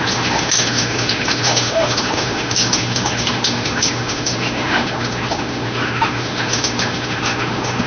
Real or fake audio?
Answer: fake